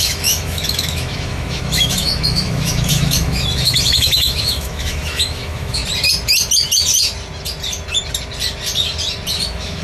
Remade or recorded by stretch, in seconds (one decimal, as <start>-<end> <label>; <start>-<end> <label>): 0.0-5.8 remade; 5.8-9.3 recorded; 9.3-9.8 remade

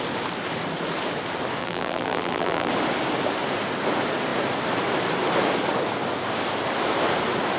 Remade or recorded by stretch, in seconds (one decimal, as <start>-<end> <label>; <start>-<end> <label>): 0.0-1.6 recorded; 1.6-2.7 remade; 2.7-7.6 recorded

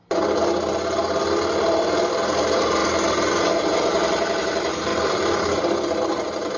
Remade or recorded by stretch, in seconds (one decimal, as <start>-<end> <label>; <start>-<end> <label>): 0.0-1.6 recorded; 1.6-6.6 remade

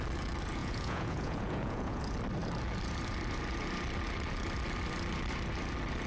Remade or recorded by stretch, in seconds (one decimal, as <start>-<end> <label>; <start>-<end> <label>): 0.0-0.6 recorded; 0.6-2.0 remade; 2.0-6.1 recorded

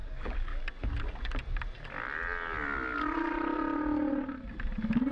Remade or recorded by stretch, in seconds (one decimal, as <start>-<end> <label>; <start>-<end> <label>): 0.0-0.6 remade; 0.6-5.1 recorded

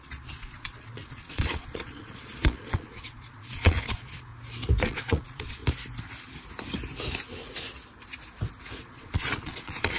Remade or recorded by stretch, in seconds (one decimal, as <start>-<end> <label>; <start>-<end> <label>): 0.0-4.3 remade; 4.3-4.8 recorded; 4.8-5.6 remade; 5.6-8.8 recorded; 8.8-10.0 remade